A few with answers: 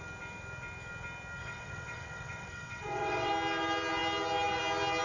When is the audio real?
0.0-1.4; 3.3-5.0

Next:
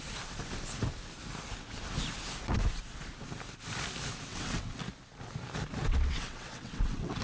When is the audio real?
0.0-4.3; 4.8-5.8

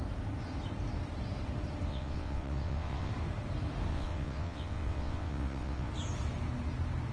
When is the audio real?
0.0-1.9; 3.1-3.9; 5.9-7.1

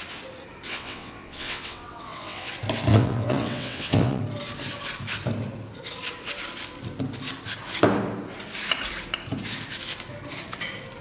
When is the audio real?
0.0-0.7; 2.5-2.9; 4.2-11.0